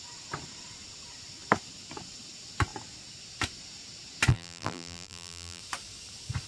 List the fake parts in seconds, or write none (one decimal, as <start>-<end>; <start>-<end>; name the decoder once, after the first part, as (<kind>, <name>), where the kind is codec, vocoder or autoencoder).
4.3-5.6 (vocoder, BigVGAN v2)